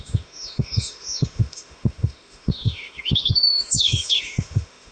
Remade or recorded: remade